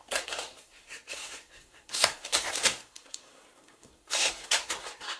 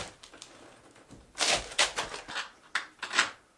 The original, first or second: second